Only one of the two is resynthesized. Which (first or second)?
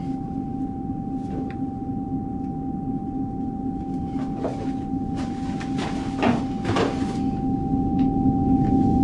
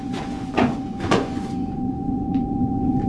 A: second